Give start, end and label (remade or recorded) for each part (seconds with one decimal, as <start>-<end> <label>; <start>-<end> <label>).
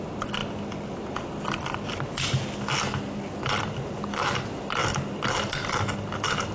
0.0-6.5 recorded